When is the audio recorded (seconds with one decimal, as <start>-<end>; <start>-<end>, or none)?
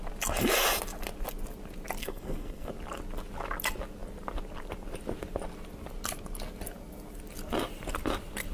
0.0-2.0; 2.7-8.5